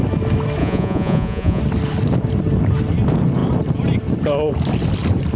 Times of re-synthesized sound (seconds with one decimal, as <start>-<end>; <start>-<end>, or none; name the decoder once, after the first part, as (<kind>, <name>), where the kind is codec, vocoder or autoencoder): 0.6-1.6 (vocoder, Vocos)